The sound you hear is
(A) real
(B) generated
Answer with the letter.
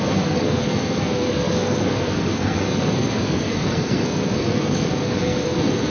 B